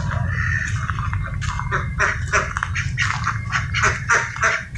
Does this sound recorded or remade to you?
recorded